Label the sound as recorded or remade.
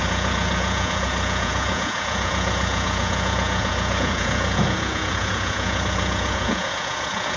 remade